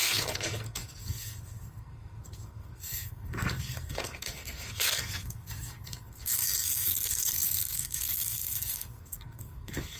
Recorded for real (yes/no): no